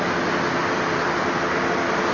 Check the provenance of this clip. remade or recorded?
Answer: recorded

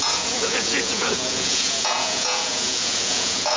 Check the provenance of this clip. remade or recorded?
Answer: remade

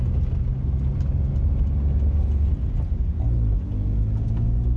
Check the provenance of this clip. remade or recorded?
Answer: recorded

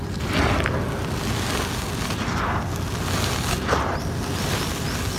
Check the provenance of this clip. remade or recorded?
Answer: recorded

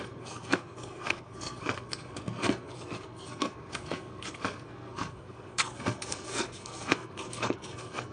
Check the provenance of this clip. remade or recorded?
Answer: remade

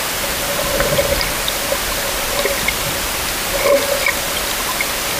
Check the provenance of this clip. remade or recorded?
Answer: recorded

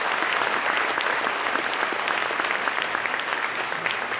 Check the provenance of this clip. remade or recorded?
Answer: recorded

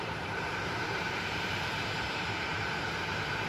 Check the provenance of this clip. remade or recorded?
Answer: remade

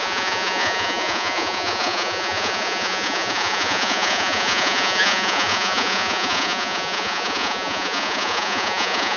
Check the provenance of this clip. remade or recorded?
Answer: remade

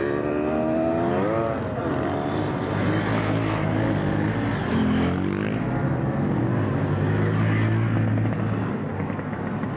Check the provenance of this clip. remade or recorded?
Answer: recorded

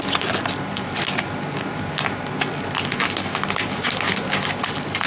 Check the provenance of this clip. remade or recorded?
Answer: recorded